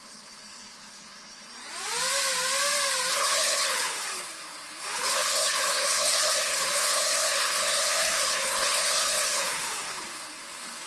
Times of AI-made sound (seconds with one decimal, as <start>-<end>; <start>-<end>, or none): 0.0-1.5; 3.1-10.9